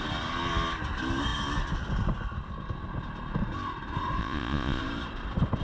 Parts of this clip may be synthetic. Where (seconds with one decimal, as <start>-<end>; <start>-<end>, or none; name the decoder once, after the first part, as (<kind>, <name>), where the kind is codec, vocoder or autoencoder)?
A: 4.2-4.8 (vocoder, Vocos)